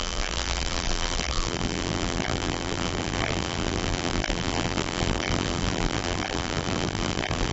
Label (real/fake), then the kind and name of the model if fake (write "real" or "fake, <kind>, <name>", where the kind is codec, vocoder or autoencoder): fake, vocoder, BigVGAN v2